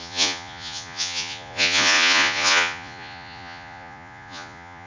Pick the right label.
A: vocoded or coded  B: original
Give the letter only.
A